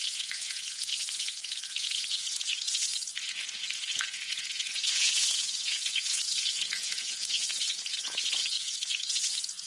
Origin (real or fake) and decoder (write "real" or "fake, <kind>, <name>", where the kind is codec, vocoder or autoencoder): fake, vocoder, Vocos